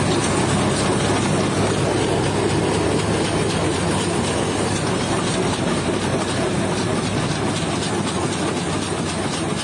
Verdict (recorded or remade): recorded